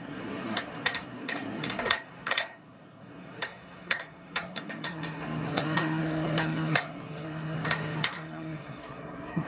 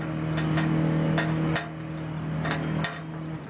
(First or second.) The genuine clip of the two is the second